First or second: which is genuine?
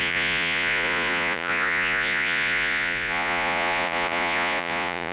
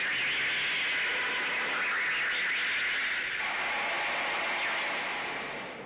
second